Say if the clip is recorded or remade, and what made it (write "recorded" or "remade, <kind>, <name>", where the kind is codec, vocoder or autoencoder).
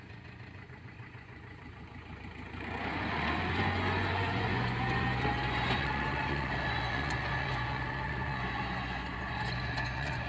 remade, vocoder, Vocos